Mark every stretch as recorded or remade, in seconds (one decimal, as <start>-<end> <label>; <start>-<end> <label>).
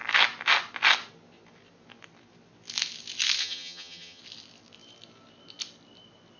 0.0-3.4 recorded; 3.4-4.2 remade; 4.2-6.4 recorded